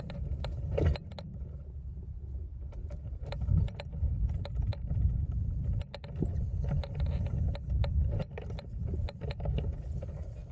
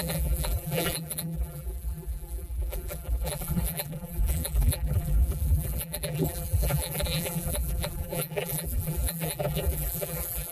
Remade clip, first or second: second